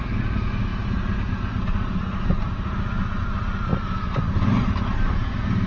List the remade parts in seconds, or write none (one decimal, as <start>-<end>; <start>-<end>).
none